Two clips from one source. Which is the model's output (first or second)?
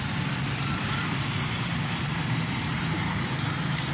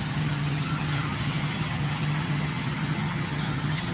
second